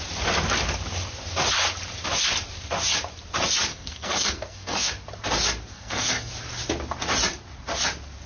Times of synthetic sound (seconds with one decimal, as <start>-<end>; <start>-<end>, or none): 3.7-4.9; 5.7-6.3